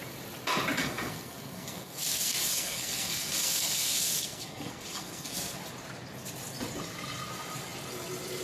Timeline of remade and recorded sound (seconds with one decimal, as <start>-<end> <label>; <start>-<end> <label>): 0.0-0.8 recorded; 0.8-5.6 remade; 5.6-8.4 recorded